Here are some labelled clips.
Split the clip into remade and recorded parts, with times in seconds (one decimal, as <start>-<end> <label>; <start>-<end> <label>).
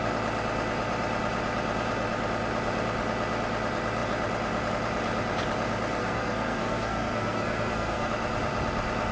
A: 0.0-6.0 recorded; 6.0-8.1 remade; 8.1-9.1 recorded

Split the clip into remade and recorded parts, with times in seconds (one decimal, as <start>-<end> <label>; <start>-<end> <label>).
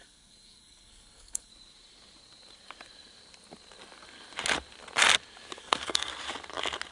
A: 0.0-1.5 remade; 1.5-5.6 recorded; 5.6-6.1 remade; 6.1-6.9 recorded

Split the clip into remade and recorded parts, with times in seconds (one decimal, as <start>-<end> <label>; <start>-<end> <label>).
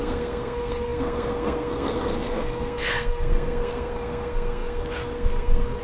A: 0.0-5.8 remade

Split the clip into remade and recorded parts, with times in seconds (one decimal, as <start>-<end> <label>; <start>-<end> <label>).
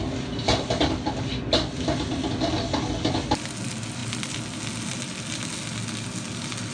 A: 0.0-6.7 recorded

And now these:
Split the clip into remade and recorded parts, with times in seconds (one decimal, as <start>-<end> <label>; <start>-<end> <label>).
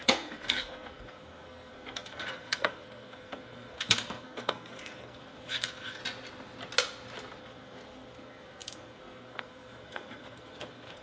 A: 0.0-6.0 remade; 6.0-7.4 recorded; 7.4-11.0 remade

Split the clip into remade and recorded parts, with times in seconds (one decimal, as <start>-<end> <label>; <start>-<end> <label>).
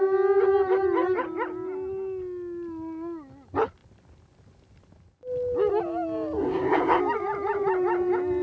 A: 0.0-6.4 recorded; 6.4-7.0 remade; 7.0-8.4 recorded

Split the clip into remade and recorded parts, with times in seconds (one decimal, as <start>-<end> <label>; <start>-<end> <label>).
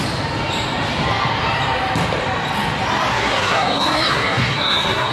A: 0.0-3.1 recorded; 3.1-5.1 remade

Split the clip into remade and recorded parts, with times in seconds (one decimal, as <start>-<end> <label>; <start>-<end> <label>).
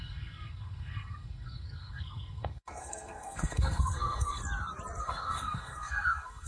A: 0.0-4.4 remade; 4.4-5.0 recorded; 5.0-6.5 remade